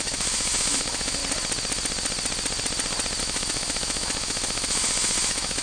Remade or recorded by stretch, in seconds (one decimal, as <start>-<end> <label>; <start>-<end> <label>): 0.0-1.2 remade; 1.2-3.2 recorded; 3.2-5.6 remade